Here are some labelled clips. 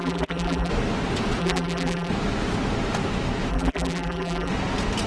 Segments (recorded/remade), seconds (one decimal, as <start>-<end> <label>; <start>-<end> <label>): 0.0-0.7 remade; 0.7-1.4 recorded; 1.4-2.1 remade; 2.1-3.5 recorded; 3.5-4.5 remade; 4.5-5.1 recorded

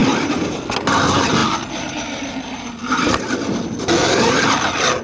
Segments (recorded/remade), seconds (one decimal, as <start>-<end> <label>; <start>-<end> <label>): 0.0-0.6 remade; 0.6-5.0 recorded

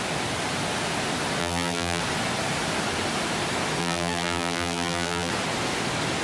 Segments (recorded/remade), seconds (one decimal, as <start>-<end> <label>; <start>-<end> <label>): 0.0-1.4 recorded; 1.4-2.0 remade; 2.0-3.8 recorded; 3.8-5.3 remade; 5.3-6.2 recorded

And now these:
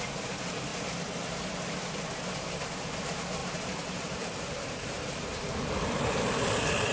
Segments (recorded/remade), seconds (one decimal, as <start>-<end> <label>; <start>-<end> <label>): 0.0-3.4 recorded; 3.4-5.6 remade; 5.6-6.9 recorded

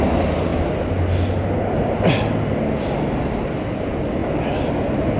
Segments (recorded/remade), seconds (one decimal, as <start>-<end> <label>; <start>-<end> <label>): 0.0-0.5 remade; 0.5-3.0 recorded; 3.0-4.2 remade; 4.2-4.8 recorded; 4.8-5.2 remade